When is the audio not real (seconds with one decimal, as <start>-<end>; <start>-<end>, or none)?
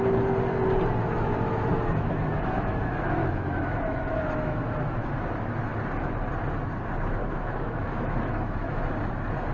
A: 1.1-5.1; 7.2-8.9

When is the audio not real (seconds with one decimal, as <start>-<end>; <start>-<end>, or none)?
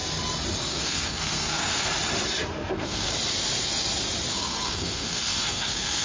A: 0.6-1.9; 2.5-3.1; 4.3-6.0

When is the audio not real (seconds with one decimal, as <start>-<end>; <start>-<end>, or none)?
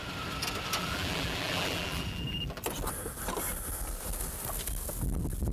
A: 0.8-2.6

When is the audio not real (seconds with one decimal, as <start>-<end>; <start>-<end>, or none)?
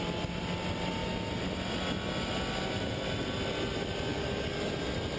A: 4.1-4.7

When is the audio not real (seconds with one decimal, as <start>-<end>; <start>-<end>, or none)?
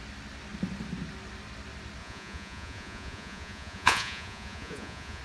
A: 2.0-5.2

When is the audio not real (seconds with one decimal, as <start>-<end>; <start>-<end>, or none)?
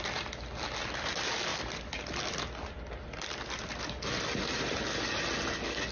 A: none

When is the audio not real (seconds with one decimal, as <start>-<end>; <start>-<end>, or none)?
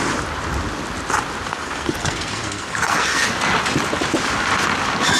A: 1.5-3.3